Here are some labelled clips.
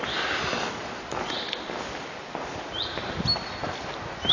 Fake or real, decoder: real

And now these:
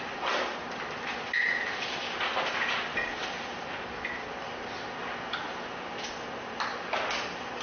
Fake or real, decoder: real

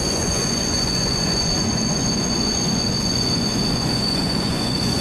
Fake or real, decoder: fake, vocoder, Vocos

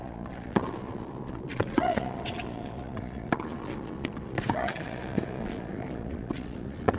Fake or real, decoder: fake, vocoder, Vocos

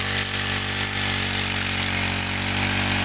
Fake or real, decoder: real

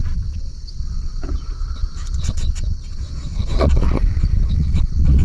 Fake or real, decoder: fake, vocoder, Vocos